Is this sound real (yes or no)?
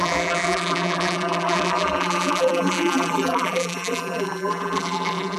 no